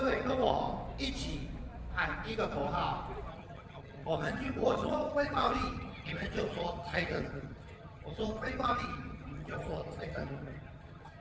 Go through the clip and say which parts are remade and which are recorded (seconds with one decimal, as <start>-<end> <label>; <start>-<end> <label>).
0.0-0.6 remade; 0.6-3.3 recorded; 3.3-11.2 remade